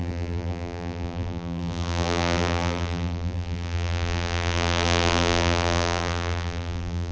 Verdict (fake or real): fake